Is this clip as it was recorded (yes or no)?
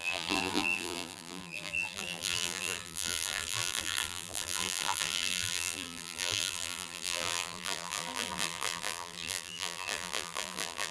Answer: no